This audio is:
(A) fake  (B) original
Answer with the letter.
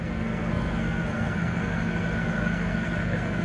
A